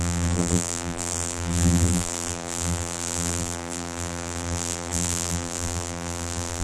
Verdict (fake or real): fake